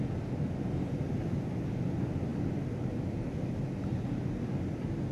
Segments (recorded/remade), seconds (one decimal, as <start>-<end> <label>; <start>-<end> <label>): 0.0-5.1 recorded